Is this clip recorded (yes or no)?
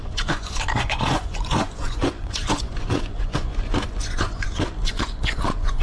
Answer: no